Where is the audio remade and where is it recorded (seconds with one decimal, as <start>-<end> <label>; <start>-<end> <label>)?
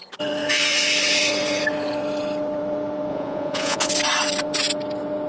0.0-3.1 recorded; 3.1-3.9 remade; 3.9-5.3 recorded